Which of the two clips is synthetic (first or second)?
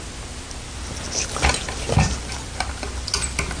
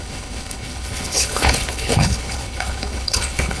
second